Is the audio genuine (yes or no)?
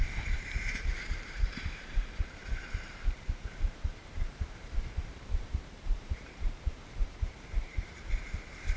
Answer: no